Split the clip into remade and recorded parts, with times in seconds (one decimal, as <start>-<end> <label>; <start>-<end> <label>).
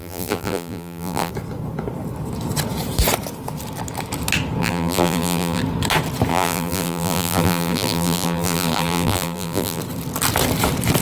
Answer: 0.0-1.3 remade; 1.3-4.6 recorded; 4.6-5.6 remade; 5.6-6.3 recorded; 6.3-9.8 remade; 9.8-11.0 recorded